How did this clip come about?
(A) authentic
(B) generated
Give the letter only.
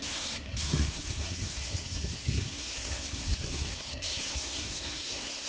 B